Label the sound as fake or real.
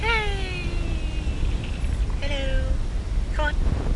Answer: real